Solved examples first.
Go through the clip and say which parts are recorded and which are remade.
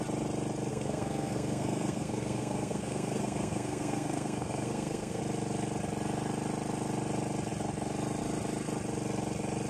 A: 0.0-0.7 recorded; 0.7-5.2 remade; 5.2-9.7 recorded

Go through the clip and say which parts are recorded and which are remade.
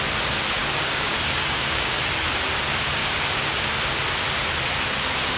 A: 0.0-0.6 recorded; 0.6-1.9 remade; 1.9-3.0 recorded; 3.0-3.7 remade; 3.7-5.4 recorded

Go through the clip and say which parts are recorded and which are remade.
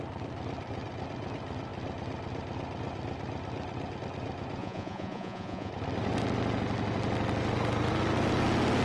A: 0.0-4.6 recorded; 4.6-5.7 remade; 5.7-8.8 recorded